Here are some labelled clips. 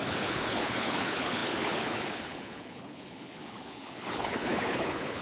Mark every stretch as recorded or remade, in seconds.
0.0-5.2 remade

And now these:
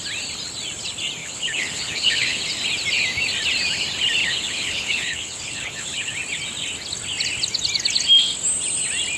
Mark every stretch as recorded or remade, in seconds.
0.0-1.2 recorded; 1.2-2.4 remade; 2.4-4.2 recorded; 4.2-6.1 remade; 6.1-9.2 recorded

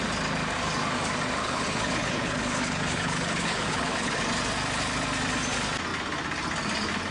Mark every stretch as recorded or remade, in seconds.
0.0-1.4 recorded; 1.4-4.2 remade; 4.2-7.1 recorded

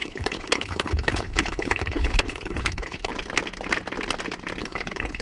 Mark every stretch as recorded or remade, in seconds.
0.0-3.1 remade; 3.1-4.6 recorded; 4.6-5.2 remade

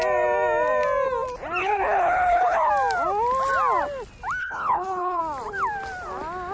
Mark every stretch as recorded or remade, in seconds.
0.0-1.6 recorded; 1.6-2.7 remade; 2.7-4.4 recorded; 4.4-5.2 remade; 5.2-6.5 recorded

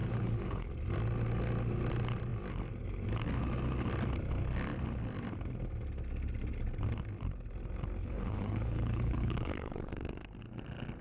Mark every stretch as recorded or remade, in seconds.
0.0-0.7 remade; 0.7-8.0 recorded; 8.0-9.9 remade; 9.9-11.0 recorded